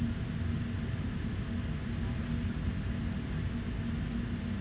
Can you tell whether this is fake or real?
real